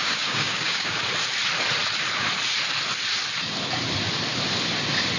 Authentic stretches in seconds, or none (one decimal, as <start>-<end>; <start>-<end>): 1.0-5.2

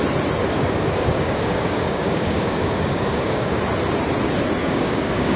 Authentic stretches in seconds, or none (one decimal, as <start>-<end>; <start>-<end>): 0.0-0.4; 3.6-4.6

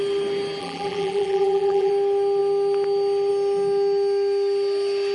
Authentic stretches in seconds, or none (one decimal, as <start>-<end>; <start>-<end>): 0.0-0.6; 1.9-5.1

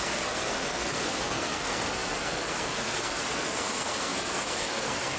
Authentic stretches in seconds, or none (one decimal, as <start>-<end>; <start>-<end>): none